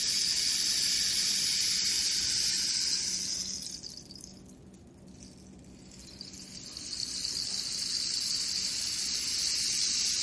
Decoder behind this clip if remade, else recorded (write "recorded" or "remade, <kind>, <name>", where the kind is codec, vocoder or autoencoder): recorded